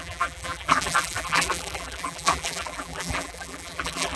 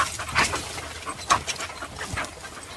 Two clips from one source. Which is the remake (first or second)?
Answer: first